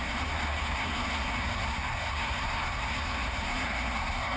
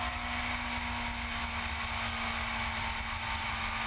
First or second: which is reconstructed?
first